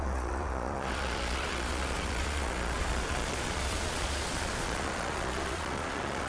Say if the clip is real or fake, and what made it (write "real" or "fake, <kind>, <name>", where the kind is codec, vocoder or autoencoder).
fake, vocoder, Vocos